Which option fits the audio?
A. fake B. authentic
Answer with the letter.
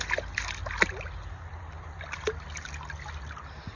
B